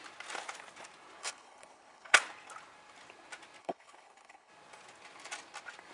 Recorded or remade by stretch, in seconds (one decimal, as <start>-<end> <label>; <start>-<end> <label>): 0.0-1.2 recorded; 1.2-2.2 remade; 2.2-3.6 recorded; 3.6-4.5 remade; 4.5-5.9 recorded